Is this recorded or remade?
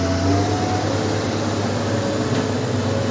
recorded